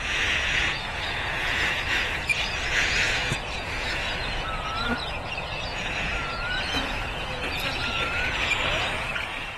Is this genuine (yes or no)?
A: no